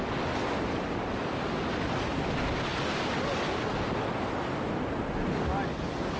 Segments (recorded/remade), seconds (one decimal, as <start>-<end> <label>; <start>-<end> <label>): 0.0-6.2 recorded

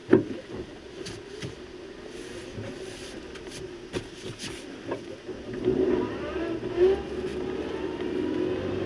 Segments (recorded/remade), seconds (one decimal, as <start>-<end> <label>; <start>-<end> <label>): 0.0-8.9 recorded

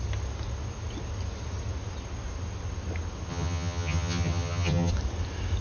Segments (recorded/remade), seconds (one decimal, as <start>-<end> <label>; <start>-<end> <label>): 0.0-3.3 recorded; 3.3-4.9 remade; 4.9-5.6 recorded

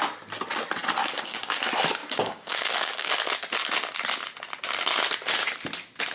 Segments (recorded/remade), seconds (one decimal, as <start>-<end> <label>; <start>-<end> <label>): 0.0-1.0 recorded; 1.0-1.6 remade; 1.6-2.0 recorded; 2.0-3.1 remade; 3.1-6.1 recorded

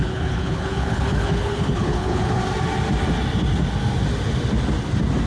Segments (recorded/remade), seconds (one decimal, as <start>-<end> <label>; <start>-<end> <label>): 0.0-2.4 remade; 2.4-5.3 recorded